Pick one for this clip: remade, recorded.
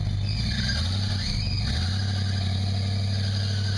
recorded